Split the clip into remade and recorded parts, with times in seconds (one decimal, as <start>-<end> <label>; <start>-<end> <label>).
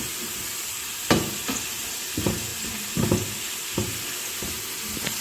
0.0-5.2 recorded